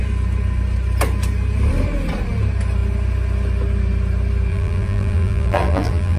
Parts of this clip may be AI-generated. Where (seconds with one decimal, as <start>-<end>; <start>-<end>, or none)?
4.5-6.2

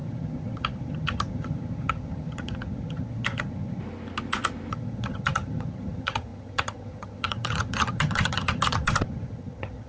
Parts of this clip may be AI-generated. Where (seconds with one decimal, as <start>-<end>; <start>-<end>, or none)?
0.0-3.8; 4.7-9.9